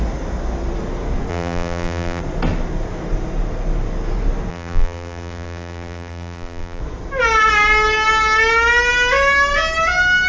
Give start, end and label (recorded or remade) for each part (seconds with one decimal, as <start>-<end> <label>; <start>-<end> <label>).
0.0-1.3 recorded; 1.3-2.2 remade; 2.2-4.5 recorded; 4.5-6.8 remade; 6.8-10.3 recorded

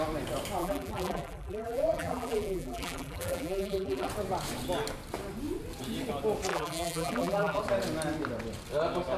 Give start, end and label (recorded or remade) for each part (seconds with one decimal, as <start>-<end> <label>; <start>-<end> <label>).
0.0-0.6 recorded; 0.6-4.1 remade; 4.1-6.5 recorded; 6.5-7.6 remade; 7.6-9.2 recorded

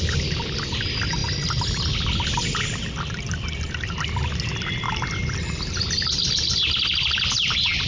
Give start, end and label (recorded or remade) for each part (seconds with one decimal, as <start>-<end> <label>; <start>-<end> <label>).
0.0-7.9 recorded

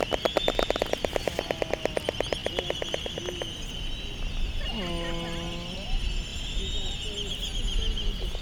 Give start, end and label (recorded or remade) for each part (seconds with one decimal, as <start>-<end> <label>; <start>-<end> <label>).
0.0-8.4 recorded